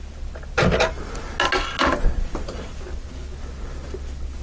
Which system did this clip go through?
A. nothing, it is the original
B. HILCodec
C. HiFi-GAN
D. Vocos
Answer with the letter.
A